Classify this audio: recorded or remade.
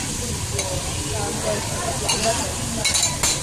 recorded